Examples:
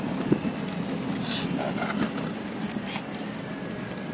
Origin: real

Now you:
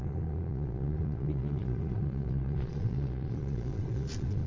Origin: fake